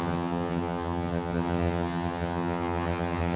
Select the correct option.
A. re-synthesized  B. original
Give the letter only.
A